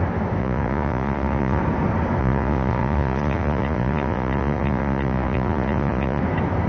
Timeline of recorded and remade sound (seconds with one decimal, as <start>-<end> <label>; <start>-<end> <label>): 0.0-0.4 recorded; 0.4-1.6 remade; 1.6-2.2 recorded; 2.2-6.2 remade; 6.2-6.7 recorded